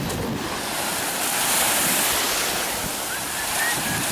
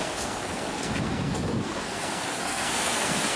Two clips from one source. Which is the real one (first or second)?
first